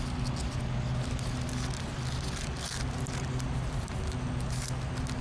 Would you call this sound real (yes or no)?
yes